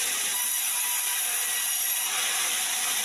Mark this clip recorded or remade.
recorded